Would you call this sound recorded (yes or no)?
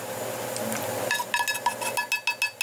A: yes